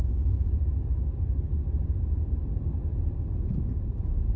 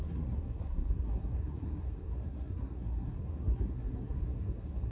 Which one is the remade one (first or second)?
second